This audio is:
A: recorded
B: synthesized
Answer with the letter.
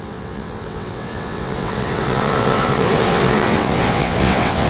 B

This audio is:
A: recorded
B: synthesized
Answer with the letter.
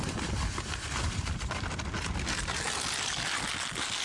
A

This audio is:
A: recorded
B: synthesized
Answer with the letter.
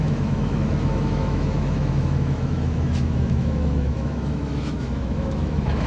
B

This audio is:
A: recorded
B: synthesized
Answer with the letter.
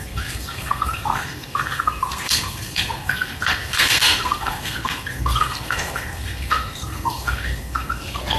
B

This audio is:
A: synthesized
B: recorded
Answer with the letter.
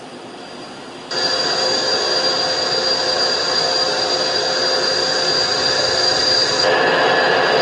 B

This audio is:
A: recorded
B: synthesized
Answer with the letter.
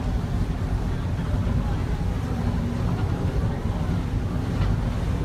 A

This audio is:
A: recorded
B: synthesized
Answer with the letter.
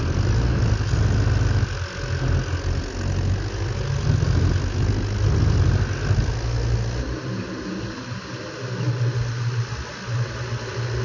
A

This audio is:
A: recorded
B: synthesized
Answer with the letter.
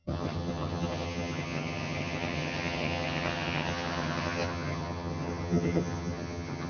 B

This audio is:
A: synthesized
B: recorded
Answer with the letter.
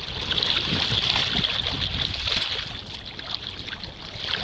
B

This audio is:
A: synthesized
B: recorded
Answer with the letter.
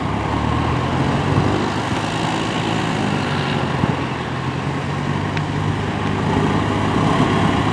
B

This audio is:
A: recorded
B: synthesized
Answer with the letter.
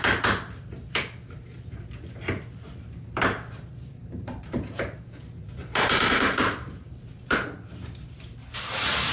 B